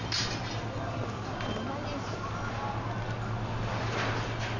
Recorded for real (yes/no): yes